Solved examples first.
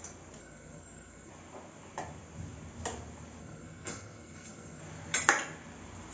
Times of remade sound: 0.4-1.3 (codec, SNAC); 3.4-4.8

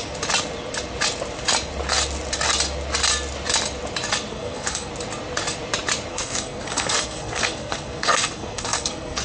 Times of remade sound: 4.3-4.9 (codec, SNAC); 6.1-9.2

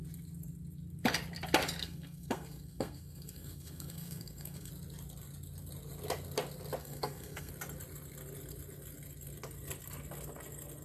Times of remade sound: 1.8-4.7 (codec, SNAC); 6.8-7.5

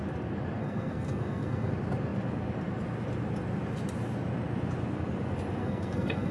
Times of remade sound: 0.6-1.7 (codec, SNAC); 5.6-6.3

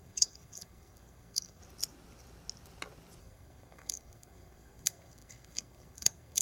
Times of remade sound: 0.0-1.6 (codec, SNAC); 3.2-6.4

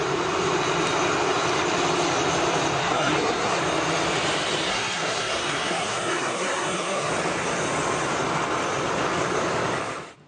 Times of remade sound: 2.8-3.6 (codec, SNAC); 4.7-7.1

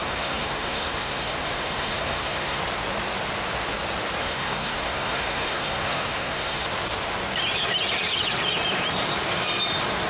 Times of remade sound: 0.0-2.6 (codec, SNAC); 4.2-6.7

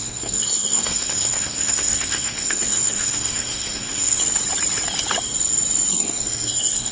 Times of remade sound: 0.0-4.2 (codec, SNAC); 5.9-6.9